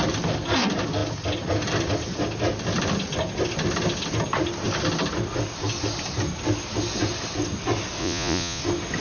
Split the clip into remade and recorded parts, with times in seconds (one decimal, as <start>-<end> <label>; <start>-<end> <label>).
0.0-8.0 recorded; 8.0-8.6 remade; 8.6-9.0 recorded